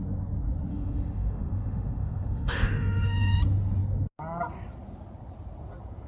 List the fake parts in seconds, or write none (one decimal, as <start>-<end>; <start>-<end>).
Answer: 0.7-3.4